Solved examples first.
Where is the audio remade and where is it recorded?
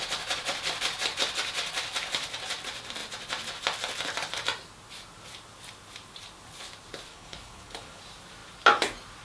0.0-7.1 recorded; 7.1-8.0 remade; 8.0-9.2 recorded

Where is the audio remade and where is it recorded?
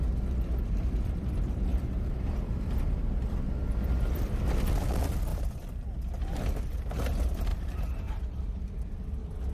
0.0-1.7 recorded; 1.7-2.8 remade; 2.8-5.3 recorded; 5.3-6.1 remade; 6.1-7.5 recorded; 7.5-8.6 remade; 8.6-9.5 recorded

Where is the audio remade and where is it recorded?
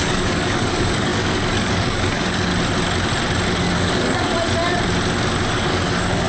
0.0-2.5 remade; 2.5-3.6 recorded; 3.6-4.3 remade; 4.3-5.5 recorded; 5.5-6.3 remade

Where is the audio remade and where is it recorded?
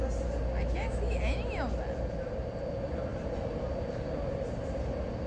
0.0-3.1 recorded; 3.1-3.7 remade; 3.7-5.3 recorded